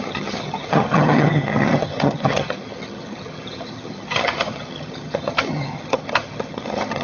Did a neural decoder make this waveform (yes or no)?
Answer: yes